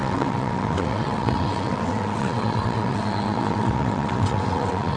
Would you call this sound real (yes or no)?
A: no